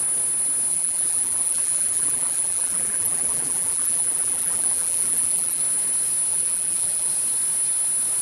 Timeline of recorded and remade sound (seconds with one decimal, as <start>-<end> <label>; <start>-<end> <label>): 0.0-0.7 recorded; 0.7-5.6 remade; 5.6-6.3 recorded; 6.3-7.1 remade; 7.1-8.2 recorded